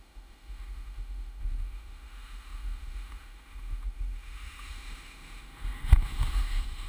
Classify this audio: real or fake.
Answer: fake